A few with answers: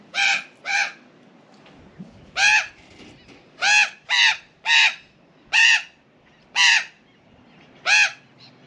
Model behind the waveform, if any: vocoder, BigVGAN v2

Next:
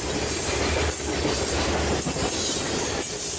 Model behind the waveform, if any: none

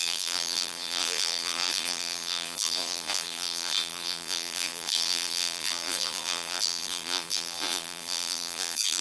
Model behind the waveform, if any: vocoder, BigVGAN v2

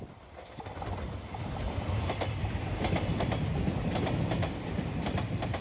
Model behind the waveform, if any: vocoder, BigVGAN v2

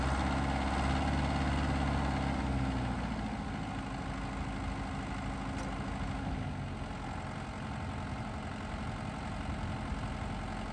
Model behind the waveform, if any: none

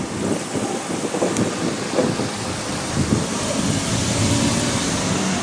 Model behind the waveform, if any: vocoder, BigVGAN v2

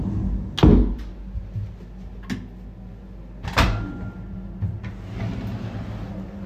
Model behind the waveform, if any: none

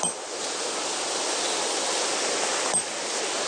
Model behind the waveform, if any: none